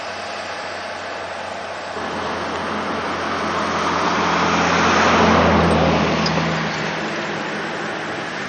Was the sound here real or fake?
real